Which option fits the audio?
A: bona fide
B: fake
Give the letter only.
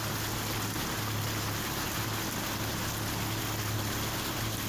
A